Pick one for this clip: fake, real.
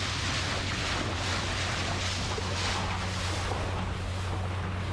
real